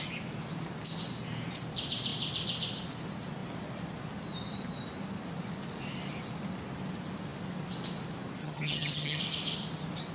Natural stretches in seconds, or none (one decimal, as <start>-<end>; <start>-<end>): 0.0-8.4; 9.2-10.1